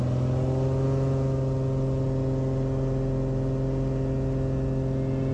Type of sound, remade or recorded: recorded